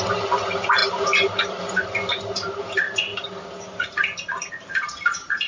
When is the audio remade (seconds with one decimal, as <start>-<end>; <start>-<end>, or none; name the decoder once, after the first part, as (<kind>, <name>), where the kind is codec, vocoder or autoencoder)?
0.0-3.1 (vocoder, BigVGAN v2); 4.5-5.5